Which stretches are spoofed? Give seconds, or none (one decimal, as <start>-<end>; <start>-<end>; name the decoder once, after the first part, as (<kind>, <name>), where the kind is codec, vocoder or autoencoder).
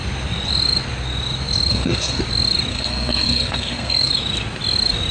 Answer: 1.7-2.2 (codec, SNAC); 2.7-4.1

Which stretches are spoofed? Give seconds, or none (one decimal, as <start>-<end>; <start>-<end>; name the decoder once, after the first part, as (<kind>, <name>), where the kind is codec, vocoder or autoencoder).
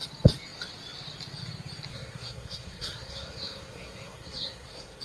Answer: 1.9-5.0 (codec, SNAC)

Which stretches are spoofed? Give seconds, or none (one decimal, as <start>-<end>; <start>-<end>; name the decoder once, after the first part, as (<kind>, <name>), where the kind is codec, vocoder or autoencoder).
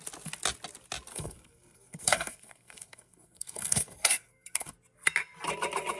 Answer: 1.1-4.7 (codec, SNAC)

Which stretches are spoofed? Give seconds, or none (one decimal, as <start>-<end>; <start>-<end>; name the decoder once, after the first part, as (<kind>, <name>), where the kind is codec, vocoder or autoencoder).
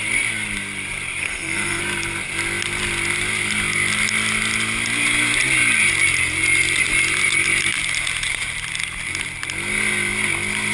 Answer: 1.2-1.8 (codec, SNAC)